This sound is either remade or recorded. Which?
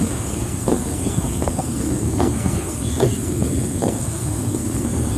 remade